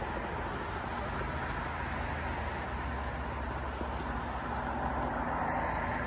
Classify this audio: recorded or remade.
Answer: recorded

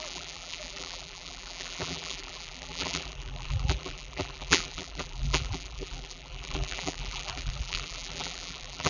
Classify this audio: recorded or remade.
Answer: remade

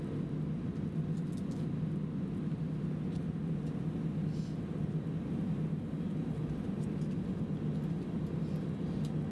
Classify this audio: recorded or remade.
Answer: recorded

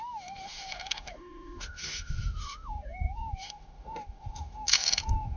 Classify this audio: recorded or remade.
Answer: remade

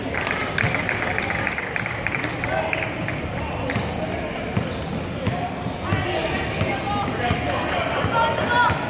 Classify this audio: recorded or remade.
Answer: recorded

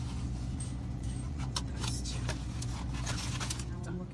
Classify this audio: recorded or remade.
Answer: remade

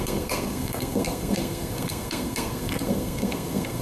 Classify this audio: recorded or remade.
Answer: remade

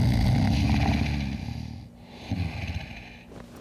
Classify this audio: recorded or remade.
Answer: recorded